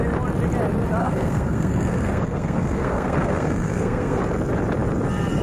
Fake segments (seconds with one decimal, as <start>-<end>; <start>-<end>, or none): 1.0-4.2